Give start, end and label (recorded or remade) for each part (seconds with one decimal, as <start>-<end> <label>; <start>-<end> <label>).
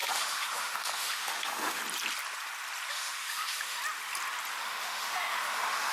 0.0-1.8 remade; 1.8-2.9 recorded; 2.9-3.8 remade; 3.8-4.6 recorded; 4.6-5.9 remade